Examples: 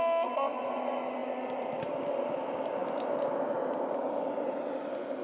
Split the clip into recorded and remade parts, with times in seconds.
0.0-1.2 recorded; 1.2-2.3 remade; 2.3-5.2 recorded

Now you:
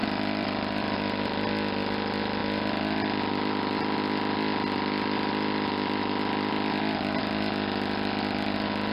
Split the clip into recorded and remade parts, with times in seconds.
0.0-1.5 remade; 1.5-8.9 recorded

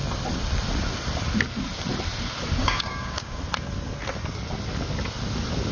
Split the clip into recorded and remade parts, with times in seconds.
0.0-2.6 recorded; 2.6-3.4 remade; 3.4-5.7 recorded

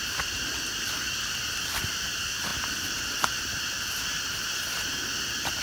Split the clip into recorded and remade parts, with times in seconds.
0.0-0.5 remade; 0.5-1.9 recorded; 1.9-2.5 remade; 2.5-5.6 recorded

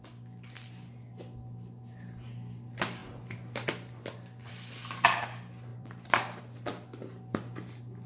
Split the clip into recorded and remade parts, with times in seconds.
0.0-5.7 recorded; 5.7-6.4 remade; 6.4-8.1 recorded

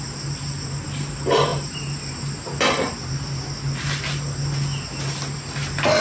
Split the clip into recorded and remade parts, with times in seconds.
0.0-6.0 recorded

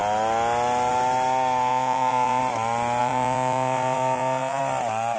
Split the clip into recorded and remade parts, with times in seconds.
0.0-1.7 recorded; 1.7-2.4 remade; 2.4-3.0 recorded; 3.0-4.6 remade; 4.6-5.2 recorded